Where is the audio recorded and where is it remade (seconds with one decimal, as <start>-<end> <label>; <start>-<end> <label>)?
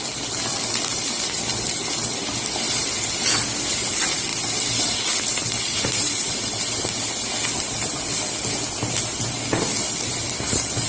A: 0.0-5.7 recorded; 5.7-6.3 remade; 6.3-10.9 recorded